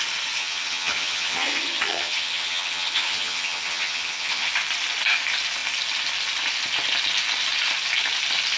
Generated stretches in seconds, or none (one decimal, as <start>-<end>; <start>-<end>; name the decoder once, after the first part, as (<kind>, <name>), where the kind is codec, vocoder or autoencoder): 0.4-4.5 (vocoder, HiFi-GAN)